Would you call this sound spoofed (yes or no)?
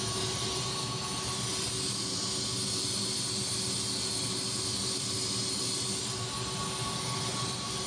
no